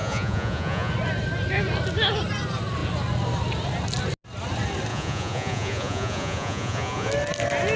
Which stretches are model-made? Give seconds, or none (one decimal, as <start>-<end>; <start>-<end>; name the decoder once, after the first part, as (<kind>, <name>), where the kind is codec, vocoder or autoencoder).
0.0-0.9 (vocoder, Vocos); 4.9-7.1